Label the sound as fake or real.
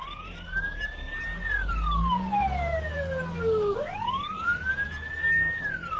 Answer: real